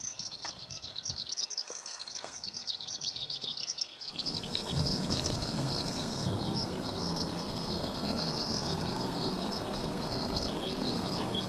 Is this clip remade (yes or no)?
yes